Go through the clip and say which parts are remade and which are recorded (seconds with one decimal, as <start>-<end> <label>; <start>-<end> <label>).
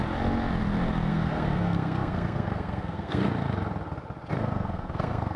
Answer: 0.0-1.1 recorded; 1.1-3.2 remade; 3.2-4.3 recorded; 4.3-5.4 remade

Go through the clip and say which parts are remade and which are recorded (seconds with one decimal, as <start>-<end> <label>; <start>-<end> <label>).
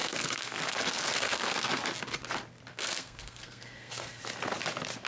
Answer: 0.0-1.8 remade; 1.8-2.7 recorded; 2.7-4.2 remade; 4.2-5.1 recorded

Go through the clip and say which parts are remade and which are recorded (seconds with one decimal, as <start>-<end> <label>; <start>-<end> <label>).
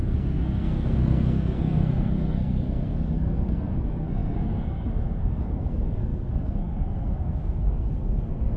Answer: 0.0-8.6 remade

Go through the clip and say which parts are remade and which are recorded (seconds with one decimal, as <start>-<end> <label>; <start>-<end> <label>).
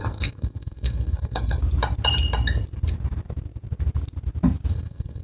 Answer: 0.0-1.6 remade; 1.6-4.7 recorded; 4.7-5.2 remade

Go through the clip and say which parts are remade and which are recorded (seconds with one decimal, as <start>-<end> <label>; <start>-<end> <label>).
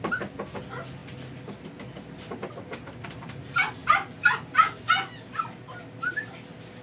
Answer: 0.0-6.8 recorded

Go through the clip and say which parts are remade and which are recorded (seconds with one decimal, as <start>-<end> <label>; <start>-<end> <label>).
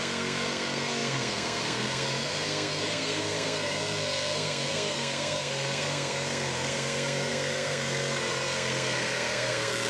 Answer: 0.0-9.9 remade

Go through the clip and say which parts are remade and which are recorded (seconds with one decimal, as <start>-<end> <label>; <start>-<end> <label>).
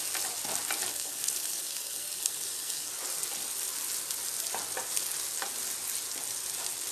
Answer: 0.0-0.9 recorded; 0.9-2.9 remade; 2.9-6.9 recorded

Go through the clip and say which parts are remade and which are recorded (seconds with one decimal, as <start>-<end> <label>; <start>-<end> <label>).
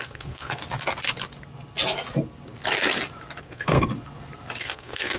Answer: 0.0-0.6 remade; 0.6-3.4 recorded; 3.4-3.9 remade; 3.9-4.6 recorded; 4.6-5.2 remade